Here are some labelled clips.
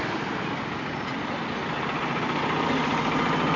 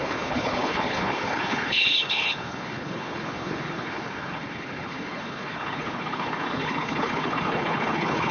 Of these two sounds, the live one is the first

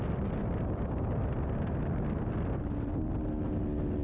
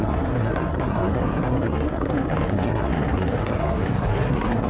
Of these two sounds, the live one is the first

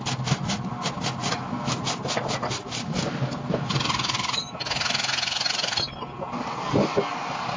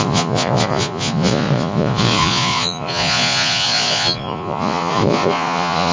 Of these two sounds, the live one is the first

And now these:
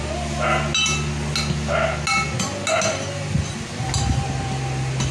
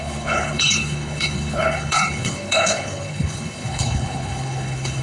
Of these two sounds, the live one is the first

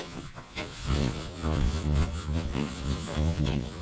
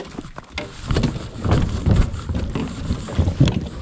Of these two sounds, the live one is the second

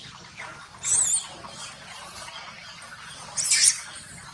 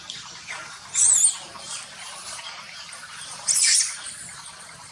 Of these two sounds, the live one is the first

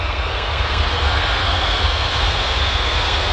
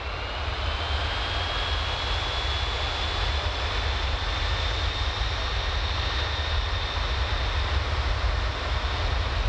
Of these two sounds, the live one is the second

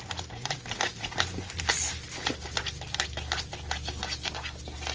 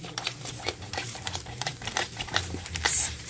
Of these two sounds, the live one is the first